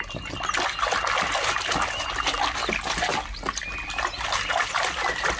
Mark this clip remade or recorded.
recorded